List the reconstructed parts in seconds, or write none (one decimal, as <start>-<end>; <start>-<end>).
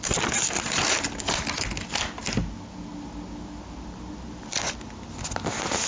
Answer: none